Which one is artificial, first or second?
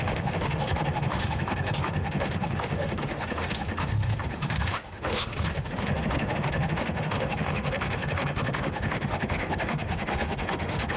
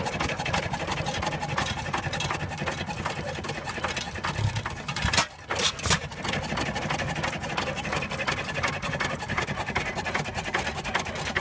first